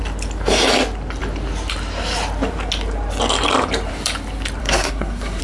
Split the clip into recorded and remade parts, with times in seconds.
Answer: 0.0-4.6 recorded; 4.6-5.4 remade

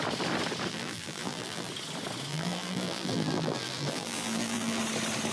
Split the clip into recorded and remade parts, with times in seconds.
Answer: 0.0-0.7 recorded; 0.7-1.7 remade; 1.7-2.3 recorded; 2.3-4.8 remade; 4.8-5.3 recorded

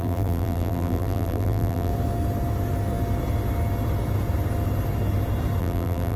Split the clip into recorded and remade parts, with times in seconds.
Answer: 0.0-1.9 remade; 1.9-5.6 recorded; 5.6-6.2 remade

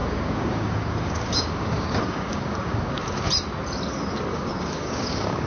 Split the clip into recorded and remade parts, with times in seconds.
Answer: 0.0-3.3 remade; 3.3-4.3 recorded; 4.3-5.5 remade

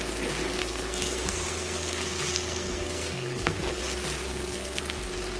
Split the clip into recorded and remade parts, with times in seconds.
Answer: 0.0-0.6 recorded; 0.6-3.8 remade; 3.8-4.2 recorded; 4.2-4.8 remade; 4.8-5.4 recorded

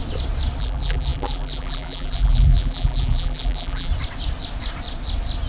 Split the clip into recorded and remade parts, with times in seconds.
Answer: 0.0-0.6 recorded; 0.6-3.9 remade; 3.9-5.5 recorded

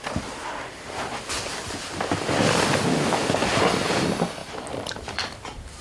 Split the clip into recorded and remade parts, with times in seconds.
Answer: 0.0-4.4 recorded; 4.4-5.2 remade; 5.2-5.8 recorded